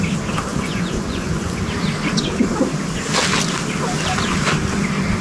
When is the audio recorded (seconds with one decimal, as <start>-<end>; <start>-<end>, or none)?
0.0-0.5; 1.6-5.2